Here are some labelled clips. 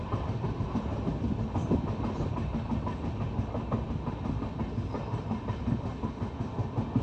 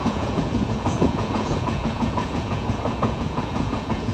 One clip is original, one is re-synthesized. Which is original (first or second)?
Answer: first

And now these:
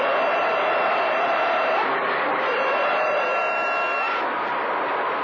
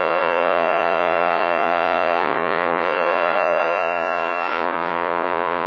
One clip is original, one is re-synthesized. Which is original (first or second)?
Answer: first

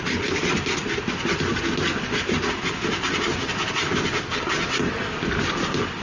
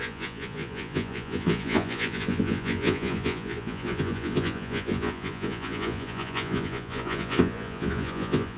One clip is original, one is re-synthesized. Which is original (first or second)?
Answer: first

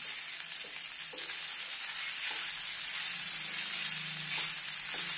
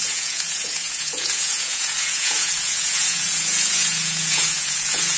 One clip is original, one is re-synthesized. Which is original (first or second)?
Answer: first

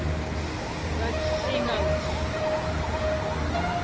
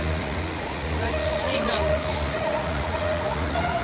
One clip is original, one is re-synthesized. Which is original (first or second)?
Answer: first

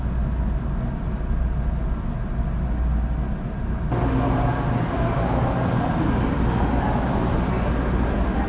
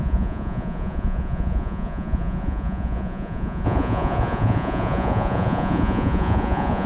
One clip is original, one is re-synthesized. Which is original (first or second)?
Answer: first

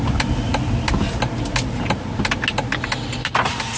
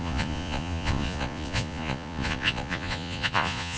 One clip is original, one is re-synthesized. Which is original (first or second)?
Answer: first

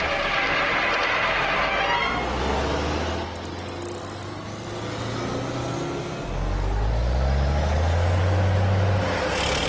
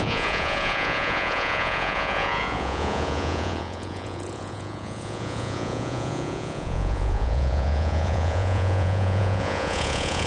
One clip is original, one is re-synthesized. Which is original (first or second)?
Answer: first